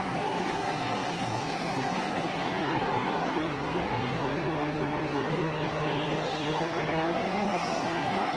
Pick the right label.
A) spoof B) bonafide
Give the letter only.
A